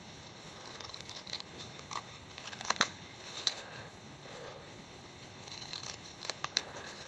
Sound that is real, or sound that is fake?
fake